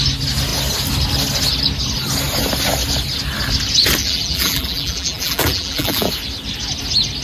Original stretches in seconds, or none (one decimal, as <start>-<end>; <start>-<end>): 0.0-4.0; 6.1-7.2